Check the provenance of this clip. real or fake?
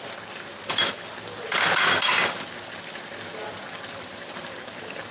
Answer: real